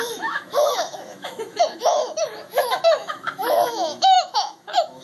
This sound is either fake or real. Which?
fake